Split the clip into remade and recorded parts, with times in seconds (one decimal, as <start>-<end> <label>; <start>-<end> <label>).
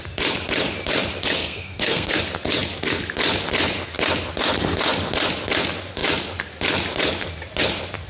0.0-1.4 recorded; 1.4-2.2 remade; 2.2-8.1 recorded